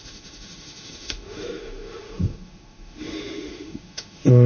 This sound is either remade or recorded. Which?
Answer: remade